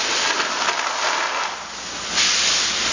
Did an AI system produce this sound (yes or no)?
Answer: no